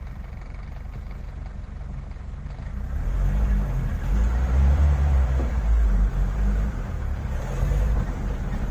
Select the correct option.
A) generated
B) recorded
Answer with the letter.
A